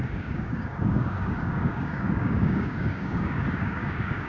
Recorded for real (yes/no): no